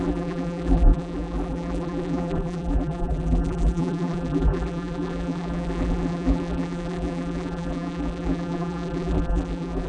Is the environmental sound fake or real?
fake